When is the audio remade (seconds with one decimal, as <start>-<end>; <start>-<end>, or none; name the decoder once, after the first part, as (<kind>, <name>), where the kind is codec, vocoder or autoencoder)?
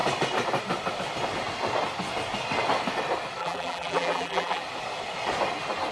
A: 3.4-4.6 (vocoder, BigVGAN v2)